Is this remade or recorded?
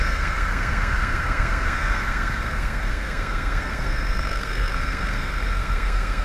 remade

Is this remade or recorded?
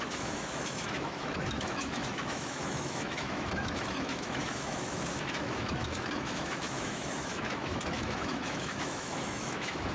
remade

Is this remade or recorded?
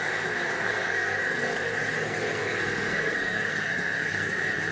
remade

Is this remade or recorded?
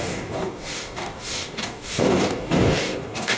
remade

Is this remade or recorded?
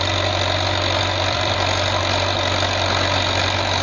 remade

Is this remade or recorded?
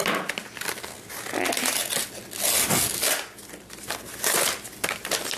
recorded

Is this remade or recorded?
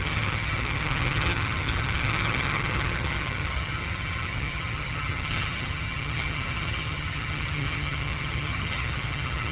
remade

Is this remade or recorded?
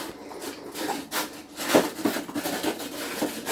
recorded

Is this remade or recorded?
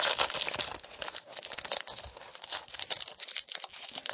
recorded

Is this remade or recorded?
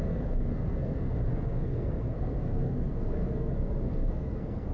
remade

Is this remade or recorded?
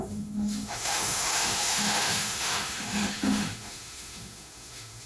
remade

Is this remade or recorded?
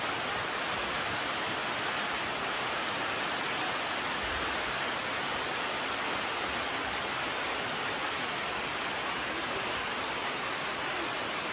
recorded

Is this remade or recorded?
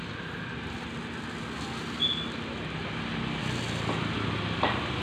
recorded